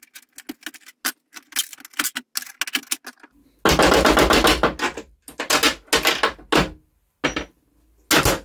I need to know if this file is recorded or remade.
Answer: recorded